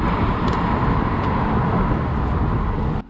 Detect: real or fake real